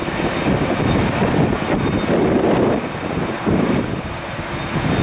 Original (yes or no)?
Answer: yes